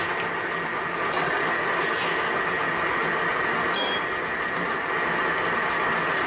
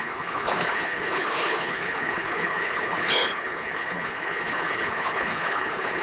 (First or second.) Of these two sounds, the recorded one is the first